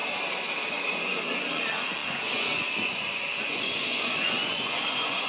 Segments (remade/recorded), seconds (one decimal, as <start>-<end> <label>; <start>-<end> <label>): 0.0-0.7 recorded; 0.7-5.3 remade